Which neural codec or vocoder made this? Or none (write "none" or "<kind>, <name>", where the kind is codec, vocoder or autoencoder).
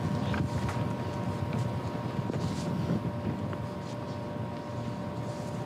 none